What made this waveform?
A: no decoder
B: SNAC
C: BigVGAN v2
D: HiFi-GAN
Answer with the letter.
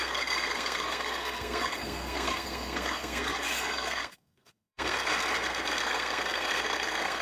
B